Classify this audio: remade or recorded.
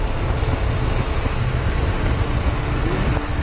recorded